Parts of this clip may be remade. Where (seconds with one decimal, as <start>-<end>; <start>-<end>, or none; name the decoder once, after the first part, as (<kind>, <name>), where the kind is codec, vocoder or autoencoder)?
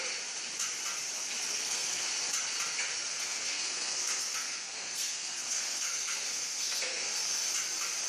1.5-2.1 (codec, SNAC); 3.1-7.5